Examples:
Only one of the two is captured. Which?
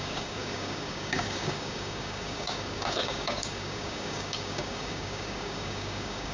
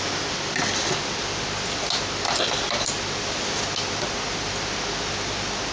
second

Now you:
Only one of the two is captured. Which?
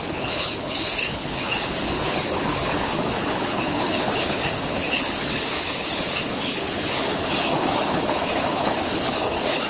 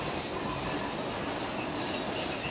second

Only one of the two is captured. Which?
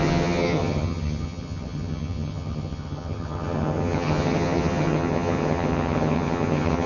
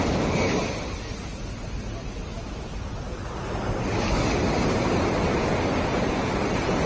second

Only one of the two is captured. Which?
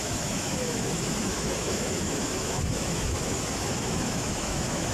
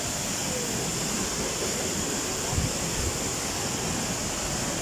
second